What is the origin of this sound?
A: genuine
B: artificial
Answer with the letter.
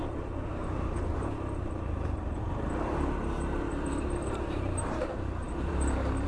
B